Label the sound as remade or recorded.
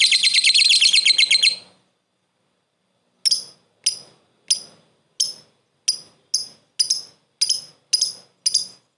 recorded